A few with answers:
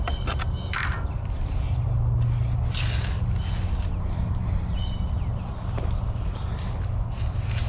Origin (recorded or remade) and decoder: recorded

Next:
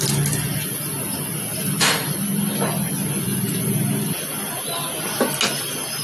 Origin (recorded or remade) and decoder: recorded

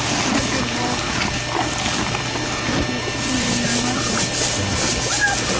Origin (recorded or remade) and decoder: recorded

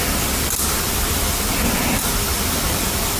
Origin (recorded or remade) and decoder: recorded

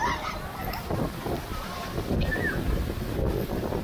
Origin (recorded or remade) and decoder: recorded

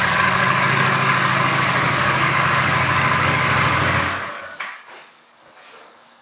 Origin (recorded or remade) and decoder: remade, codec, DAC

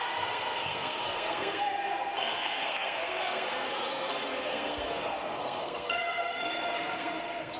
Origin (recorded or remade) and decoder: remade, codec, SNAC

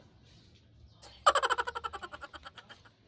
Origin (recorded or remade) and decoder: recorded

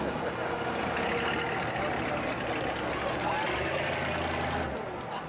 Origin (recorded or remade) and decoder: recorded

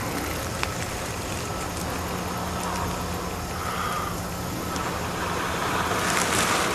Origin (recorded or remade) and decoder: recorded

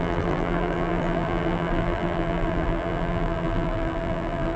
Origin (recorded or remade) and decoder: remade, vocoder, BigVGAN v2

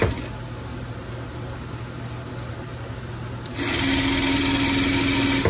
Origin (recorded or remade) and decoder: recorded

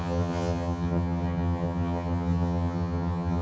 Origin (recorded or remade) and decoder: remade, vocoder, HiFi-GAN